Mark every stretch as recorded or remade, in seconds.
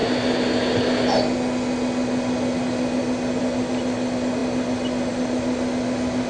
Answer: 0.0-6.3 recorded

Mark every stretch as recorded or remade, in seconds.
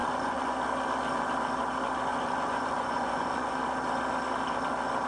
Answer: 0.0-0.5 remade; 0.5-2.1 recorded; 2.1-3.5 remade; 3.5-5.1 recorded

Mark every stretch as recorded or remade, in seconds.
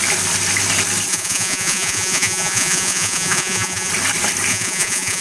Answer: 0.0-1.1 recorded; 1.1-3.9 remade; 3.9-4.5 recorded; 4.5-5.2 remade